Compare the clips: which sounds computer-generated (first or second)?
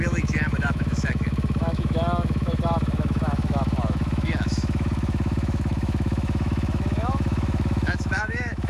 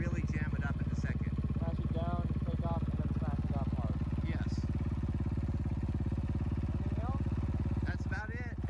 first